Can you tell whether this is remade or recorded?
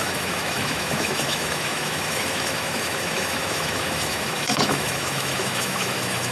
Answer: remade